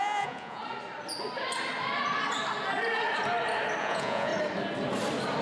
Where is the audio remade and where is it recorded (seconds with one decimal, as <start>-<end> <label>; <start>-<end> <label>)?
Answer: 0.0-0.6 remade; 0.6-3.8 recorded; 3.8-4.3 remade; 4.3-5.4 recorded